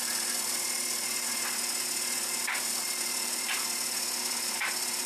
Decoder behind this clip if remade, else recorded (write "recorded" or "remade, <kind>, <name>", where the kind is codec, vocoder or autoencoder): remade, vocoder, BigVGAN v2